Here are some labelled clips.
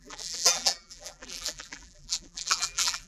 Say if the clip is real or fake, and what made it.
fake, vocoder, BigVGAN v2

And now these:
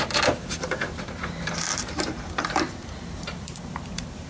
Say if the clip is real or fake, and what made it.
fake, vocoder, BigVGAN v2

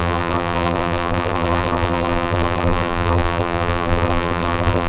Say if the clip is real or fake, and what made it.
fake, vocoder, BigVGAN v2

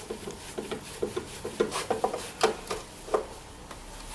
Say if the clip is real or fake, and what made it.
real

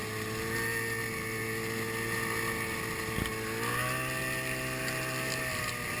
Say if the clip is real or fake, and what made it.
real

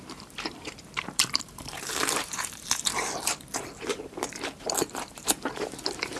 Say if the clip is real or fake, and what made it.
fake, vocoder, BigVGAN v2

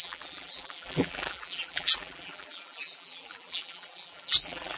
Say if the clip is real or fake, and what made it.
fake, vocoder, BigVGAN v2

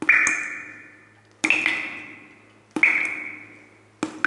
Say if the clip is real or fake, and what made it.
real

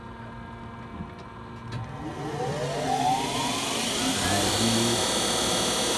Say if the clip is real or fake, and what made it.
real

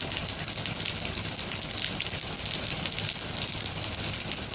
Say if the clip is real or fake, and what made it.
real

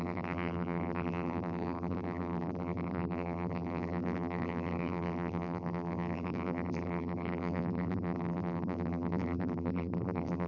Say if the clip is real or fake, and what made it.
fake, vocoder, BigVGAN v2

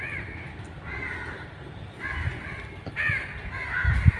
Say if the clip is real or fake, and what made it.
real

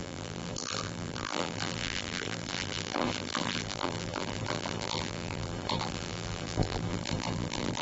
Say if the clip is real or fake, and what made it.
fake, vocoder, BigVGAN v2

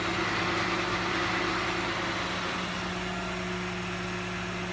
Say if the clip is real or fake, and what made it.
real